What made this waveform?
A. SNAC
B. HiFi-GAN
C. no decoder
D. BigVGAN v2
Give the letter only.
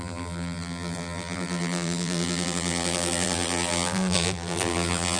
D